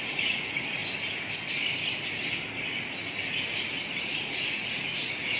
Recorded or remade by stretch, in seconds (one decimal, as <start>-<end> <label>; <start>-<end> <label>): 0.0-0.8 remade; 0.8-4.0 recorded; 4.0-5.4 remade